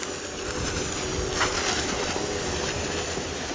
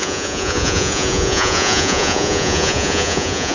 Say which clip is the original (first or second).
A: first